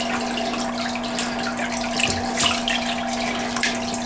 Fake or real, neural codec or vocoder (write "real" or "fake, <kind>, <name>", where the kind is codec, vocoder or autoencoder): real